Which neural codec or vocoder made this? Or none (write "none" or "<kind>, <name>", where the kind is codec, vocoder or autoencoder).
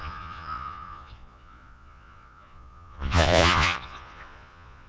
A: vocoder, Vocos